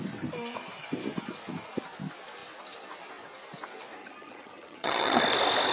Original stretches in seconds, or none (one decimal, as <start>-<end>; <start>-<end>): 0.0-4.0; 5.2-5.7